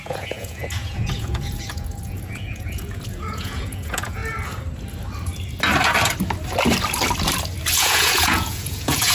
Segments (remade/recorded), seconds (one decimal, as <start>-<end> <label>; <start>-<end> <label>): 0.0-4.2 remade; 4.2-7.7 recorded; 7.7-9.1 remade